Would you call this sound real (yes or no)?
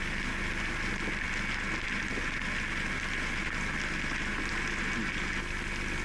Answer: yes